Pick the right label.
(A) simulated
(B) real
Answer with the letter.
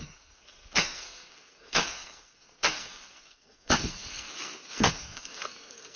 A